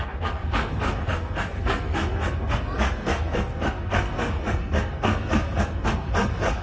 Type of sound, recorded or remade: remade